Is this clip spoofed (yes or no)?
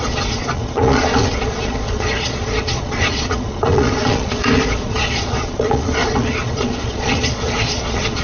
yes